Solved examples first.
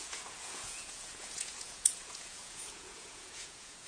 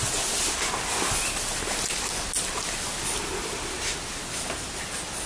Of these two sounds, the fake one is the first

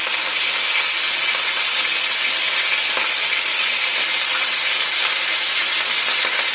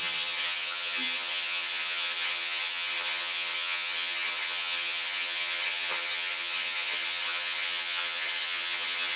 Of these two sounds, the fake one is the second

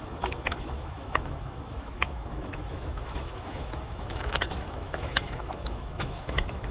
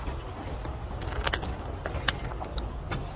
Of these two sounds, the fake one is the first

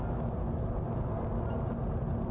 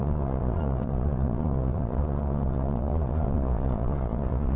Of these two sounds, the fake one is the second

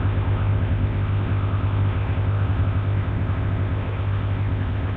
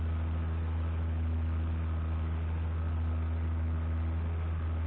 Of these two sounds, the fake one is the first